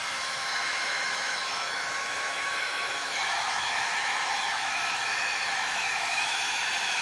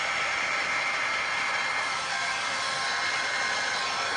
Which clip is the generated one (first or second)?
first